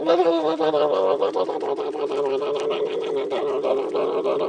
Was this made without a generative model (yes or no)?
yes